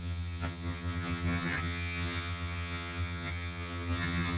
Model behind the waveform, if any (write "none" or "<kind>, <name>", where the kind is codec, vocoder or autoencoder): vocoder, HiFi-GAN